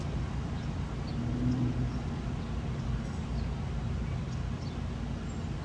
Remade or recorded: recorded